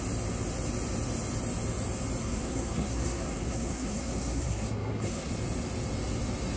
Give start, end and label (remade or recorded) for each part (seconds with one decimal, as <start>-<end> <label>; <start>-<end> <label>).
0.0-2.2 recorded; 2.2-5.3 remade; 5.3-6.6 recorded

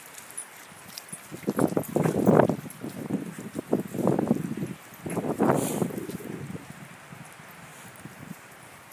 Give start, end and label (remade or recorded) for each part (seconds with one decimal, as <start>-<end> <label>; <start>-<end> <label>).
0.0-7.7 recorded; 7.7-8.9 remade

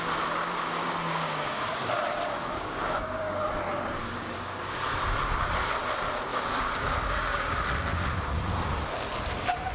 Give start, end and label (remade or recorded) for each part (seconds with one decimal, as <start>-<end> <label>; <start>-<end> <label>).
0.0-0.8 recorded; 0.8-1.9 remade; 1.9-2.4 recorded; 2.4-3.4 remade; 3.4-4.0 recorded; 4.0-4.6 remade; 4.6-6.3 recorded; 6.3-7.6 remade; 7.6-9.7 recorded

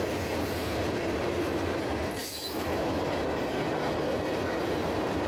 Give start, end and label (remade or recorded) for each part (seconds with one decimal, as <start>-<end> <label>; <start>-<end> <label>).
0.0-2.2 recorded; 2.2-3.0 remade; 3.0-5.3 recorded

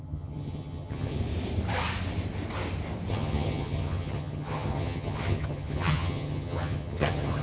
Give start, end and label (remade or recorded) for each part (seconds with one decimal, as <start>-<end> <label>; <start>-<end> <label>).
0.0-1.2 remade; 1.2-3.1 recorded; 3.1-7.4 remade